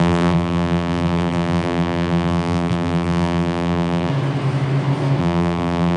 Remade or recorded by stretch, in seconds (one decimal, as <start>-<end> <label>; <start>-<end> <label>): 0.0-4.1 remade; 4.1-5.2 recorded; 5.2-6.0 remade